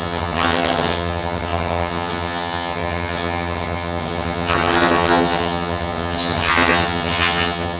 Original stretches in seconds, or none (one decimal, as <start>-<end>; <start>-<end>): none